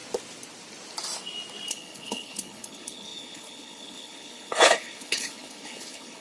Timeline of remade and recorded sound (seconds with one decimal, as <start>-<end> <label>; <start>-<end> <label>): 0.0-1.7 recorded; 1.7-6.2 remade